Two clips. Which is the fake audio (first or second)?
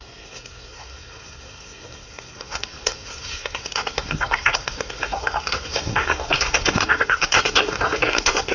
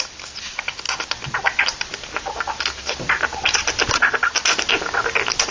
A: first